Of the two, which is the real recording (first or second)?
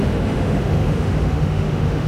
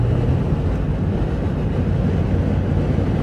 second